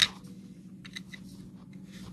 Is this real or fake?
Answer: real